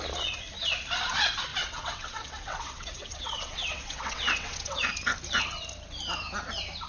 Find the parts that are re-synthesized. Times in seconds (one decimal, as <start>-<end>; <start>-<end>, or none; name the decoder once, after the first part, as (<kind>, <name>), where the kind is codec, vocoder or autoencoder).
1.5-4.8 (vocoder, WaveNeXt)